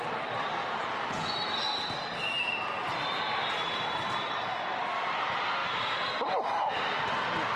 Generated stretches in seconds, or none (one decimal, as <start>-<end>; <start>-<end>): 0.0-0.5; 1.3-7.6